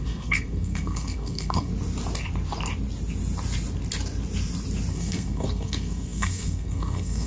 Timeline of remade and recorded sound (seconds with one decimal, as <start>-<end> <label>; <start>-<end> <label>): 0.0-1.7 remade; 1.7-4.9 recorded; 4.9-7.3 remade